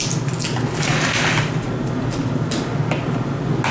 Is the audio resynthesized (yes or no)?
no